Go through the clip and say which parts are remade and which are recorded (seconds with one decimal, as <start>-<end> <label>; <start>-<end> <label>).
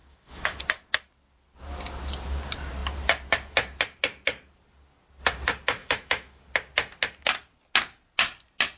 0.0-0.6 remade; 0.6-5.8 recorded; 5.8-6.4 remade; 6.4-8.8 recorded